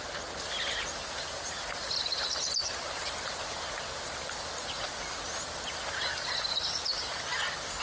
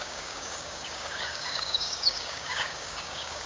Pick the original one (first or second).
first